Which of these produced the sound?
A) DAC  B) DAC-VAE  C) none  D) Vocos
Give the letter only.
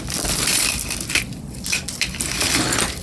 C